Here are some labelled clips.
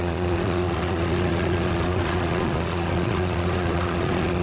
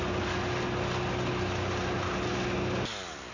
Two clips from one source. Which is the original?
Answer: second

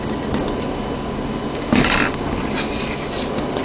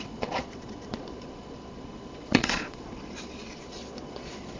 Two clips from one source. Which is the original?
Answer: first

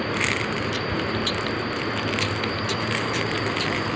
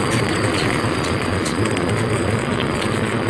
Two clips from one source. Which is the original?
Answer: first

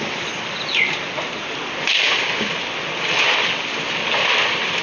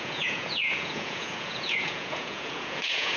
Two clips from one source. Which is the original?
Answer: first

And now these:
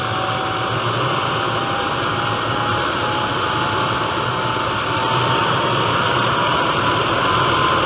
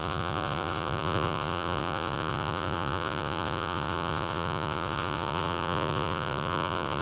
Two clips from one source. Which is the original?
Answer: first